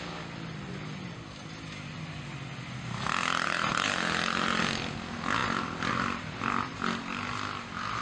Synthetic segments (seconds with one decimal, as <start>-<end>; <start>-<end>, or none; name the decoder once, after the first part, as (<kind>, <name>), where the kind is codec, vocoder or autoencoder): none